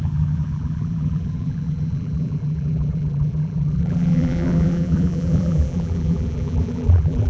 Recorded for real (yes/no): no